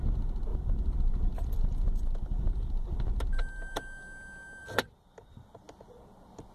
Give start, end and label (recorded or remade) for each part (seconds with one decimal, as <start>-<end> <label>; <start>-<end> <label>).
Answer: 0.0-0.5 recorded; 0.5-3.2 remade; 3.2-4.6 recorded; 4.6-5.3 remade; 5.3-6.5 recorded